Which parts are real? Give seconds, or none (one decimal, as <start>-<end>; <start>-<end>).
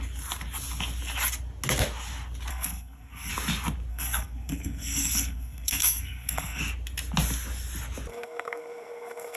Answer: 0.0-2.5; 3.3-3.9; 6.6-8.1